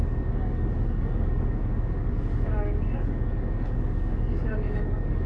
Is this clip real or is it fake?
fake